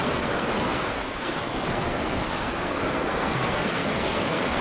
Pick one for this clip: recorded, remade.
remade